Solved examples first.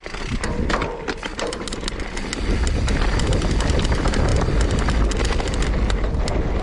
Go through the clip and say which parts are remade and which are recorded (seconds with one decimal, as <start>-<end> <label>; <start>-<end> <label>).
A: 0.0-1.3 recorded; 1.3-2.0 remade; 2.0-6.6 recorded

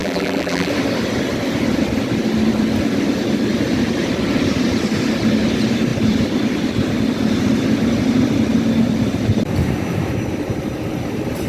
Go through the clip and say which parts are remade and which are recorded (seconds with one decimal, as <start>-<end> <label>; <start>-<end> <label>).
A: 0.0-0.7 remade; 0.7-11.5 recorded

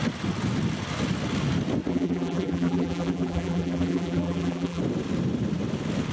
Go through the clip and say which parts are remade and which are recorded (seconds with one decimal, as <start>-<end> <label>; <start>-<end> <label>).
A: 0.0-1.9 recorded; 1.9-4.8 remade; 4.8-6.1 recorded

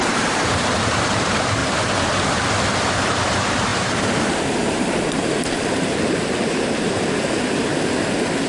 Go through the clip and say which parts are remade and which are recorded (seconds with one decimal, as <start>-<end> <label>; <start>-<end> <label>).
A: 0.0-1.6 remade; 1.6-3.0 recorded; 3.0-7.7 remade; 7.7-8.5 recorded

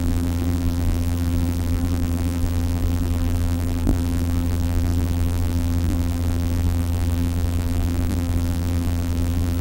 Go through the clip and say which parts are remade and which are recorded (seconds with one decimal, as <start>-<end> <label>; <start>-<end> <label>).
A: 0.0-9.6 remade

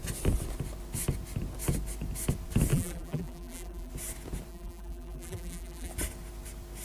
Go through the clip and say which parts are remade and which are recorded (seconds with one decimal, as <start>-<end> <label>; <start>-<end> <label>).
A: 0.0-2.7 recorded; 2.7-3.9 remade; 3.9-4.5 recorded; 4.5-5.9 remade; 5.9-6.8 recorded